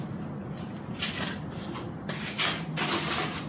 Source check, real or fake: real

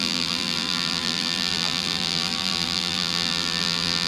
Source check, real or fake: fake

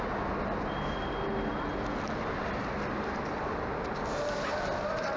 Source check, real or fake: real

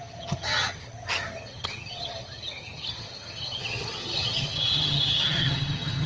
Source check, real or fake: fake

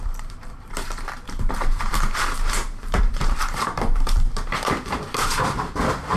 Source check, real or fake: fake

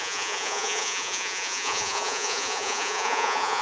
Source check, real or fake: fake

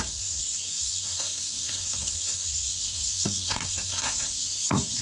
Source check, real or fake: fake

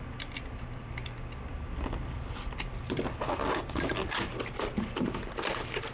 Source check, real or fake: real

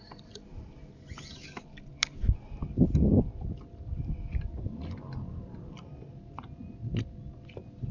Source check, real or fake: real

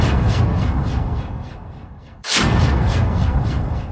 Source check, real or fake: fake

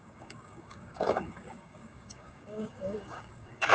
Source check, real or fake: fake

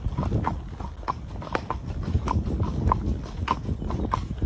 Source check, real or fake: real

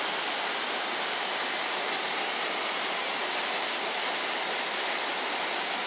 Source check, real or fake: real